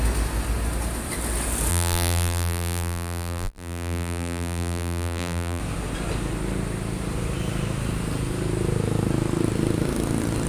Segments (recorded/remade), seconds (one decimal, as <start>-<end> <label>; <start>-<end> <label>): 0.0-1.7 recorded; 1.7-5.6 remade; 5.6-10.5 recorded